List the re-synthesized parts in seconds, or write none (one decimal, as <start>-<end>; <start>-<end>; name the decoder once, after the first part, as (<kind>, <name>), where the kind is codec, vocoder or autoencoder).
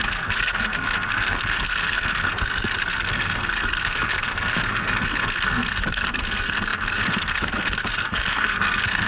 0.0-9.1 (codec, SNAC)